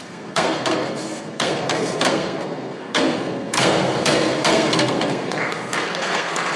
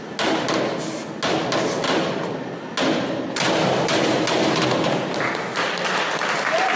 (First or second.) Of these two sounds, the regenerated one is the first